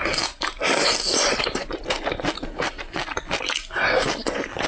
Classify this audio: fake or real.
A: real